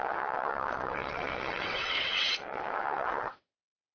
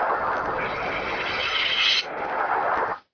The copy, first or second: first